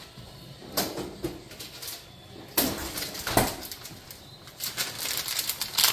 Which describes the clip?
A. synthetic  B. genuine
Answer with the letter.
A